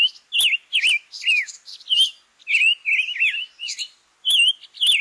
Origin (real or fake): real